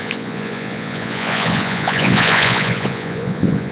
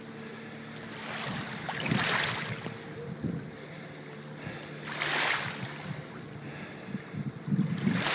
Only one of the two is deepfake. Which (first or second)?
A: first